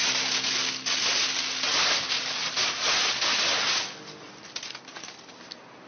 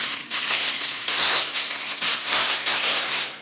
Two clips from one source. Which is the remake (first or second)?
second